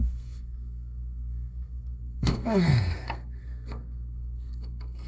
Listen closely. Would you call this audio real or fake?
fake